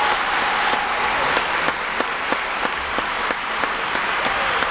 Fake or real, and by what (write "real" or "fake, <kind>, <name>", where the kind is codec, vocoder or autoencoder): real